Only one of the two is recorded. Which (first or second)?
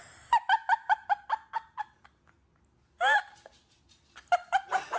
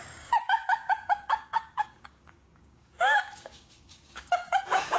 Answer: first